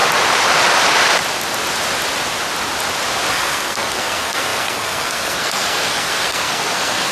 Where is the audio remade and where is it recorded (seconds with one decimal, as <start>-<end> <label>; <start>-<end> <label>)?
0.0-3.3 recorded; 3.3-7.1 remade